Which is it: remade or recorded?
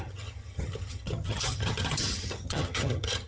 remade